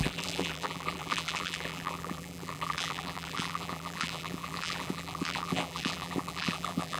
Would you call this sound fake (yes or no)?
yes